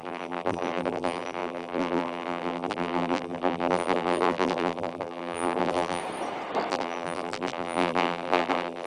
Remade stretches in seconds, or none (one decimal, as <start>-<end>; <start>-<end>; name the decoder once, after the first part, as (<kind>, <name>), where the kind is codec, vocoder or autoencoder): 0.0-6.0 (vocoder, BigVGAN v2); 6.7-8.9